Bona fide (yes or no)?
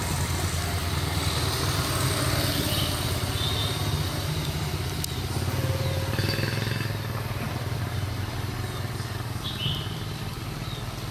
yes